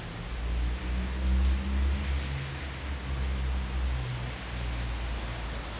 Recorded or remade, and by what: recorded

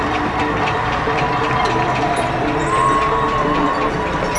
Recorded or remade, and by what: remade, vocoder, BigVGAN v2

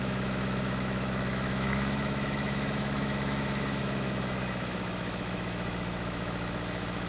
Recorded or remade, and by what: remade, autoencoder, DAC-VAE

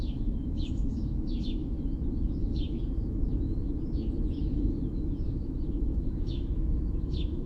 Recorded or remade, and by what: remade, autoencoder, DAC-VAE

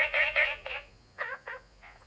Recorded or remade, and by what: remade, vocoder, Vocos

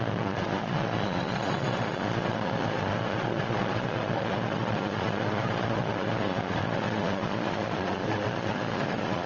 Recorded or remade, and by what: remade, vocoder, Vocos